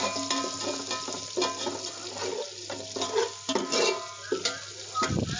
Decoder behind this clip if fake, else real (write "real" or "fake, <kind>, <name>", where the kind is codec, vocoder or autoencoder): real